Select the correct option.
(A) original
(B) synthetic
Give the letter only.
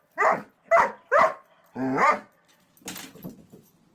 A